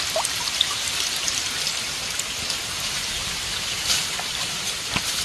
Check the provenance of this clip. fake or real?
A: fake